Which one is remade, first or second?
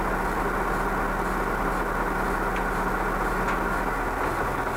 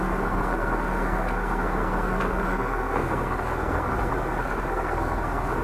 second